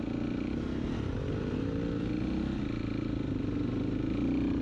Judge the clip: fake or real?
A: real